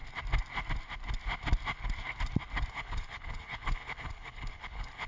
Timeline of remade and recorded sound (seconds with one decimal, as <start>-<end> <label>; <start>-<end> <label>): 0.0-2.7 recorded; 2.7-5.1 remade